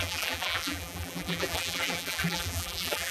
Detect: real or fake fake